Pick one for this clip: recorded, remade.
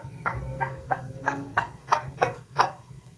remade